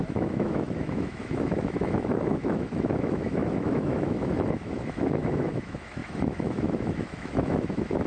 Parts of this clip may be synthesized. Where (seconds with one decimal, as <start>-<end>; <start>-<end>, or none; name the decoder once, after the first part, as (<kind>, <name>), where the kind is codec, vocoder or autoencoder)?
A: 0.0-8.1 (autoencoder, DAC-VAE)